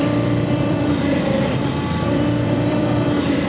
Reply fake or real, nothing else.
fake